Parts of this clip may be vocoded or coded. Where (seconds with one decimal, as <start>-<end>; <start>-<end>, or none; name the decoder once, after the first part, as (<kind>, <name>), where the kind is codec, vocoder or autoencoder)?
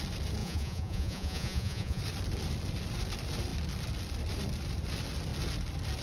0.4-2.0 (vocoder, Vocos)